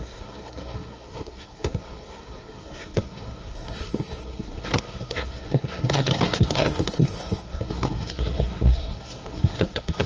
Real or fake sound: fake